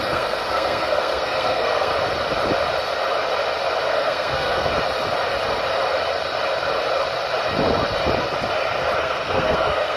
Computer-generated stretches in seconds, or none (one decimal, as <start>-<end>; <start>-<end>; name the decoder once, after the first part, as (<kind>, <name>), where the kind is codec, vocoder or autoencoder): 0.0-1.9 (codec, SNAC); 3.9-4.7; 9.0-10.0